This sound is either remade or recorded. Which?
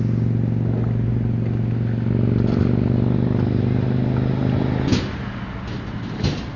recorded